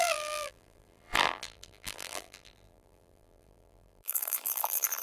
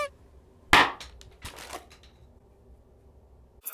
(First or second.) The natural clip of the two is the second